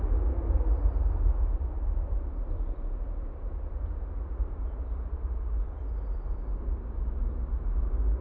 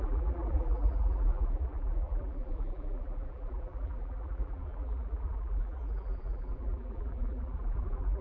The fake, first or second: second